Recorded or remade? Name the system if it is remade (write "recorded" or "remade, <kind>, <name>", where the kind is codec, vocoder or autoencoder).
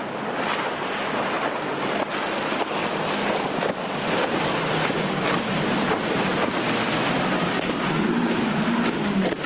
recorded